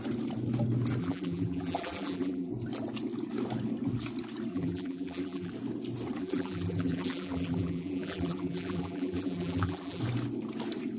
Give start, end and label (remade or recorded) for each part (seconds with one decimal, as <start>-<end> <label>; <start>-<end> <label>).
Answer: 0.0-1.0 recorded; 1.0-2.5 remade; 2.5-4.5 recorded; 4.5-5.5 remade; 5.5-6.2 recorded; 6.2-10.0 remade; 10.0-11.0 recorded